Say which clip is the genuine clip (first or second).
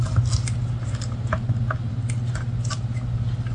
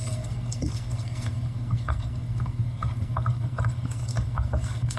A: first